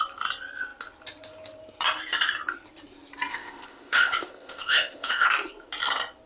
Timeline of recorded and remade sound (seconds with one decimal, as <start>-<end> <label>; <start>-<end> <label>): 0.0-3.3 recorded; 3.3-5.3 remade; 5.3-6.3 recorded